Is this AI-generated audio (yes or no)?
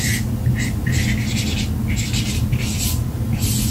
no